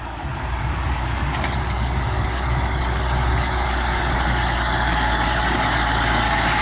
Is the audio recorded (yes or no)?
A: no